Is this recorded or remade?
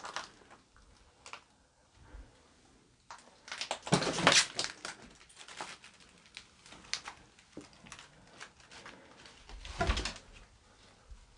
recorded